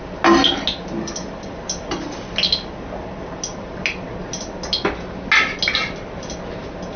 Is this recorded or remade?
recorded